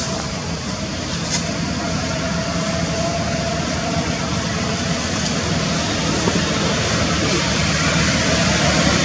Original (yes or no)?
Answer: yes